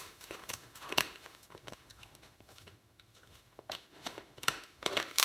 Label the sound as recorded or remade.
remade